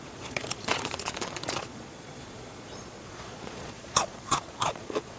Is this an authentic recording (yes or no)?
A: no